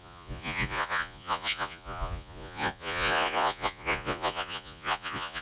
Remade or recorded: remade